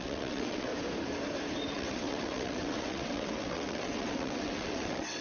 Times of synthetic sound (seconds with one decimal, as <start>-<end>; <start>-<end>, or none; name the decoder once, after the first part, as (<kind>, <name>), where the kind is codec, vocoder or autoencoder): 0.0-0.7 (vocoder, WaveNeXt); 1.7-5.2